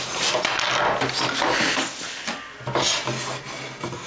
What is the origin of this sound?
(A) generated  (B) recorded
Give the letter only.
B